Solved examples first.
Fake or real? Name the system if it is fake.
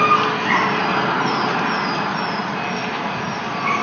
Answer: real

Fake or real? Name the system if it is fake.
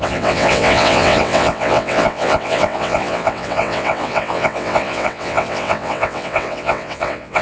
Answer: fake, vocoder, WaveNeXt